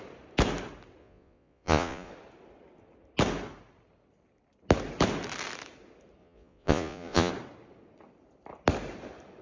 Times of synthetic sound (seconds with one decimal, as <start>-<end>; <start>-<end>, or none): 1.0-2.1; 6.2-7.3